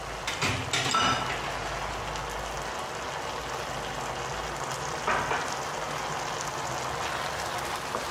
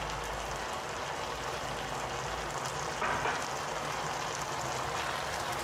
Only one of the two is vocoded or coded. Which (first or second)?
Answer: second